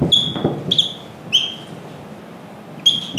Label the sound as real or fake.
real